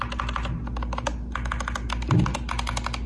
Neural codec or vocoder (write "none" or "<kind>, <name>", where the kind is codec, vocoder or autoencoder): none